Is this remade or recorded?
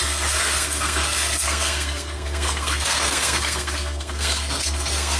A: remade